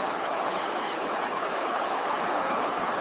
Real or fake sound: fake